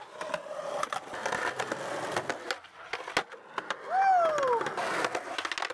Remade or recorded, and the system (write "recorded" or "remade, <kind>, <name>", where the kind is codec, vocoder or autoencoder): recorded